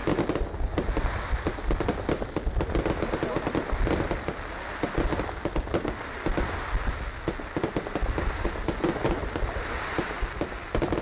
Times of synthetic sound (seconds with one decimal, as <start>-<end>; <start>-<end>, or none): none